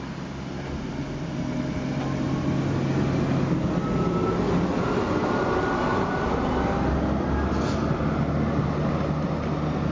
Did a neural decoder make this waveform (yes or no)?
no